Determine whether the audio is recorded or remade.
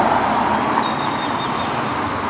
recorded